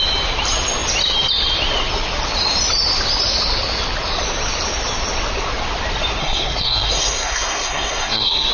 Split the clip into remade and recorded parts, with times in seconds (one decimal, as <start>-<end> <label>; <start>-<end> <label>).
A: 0.0-6.2 recorded; 6.2-8.5 remade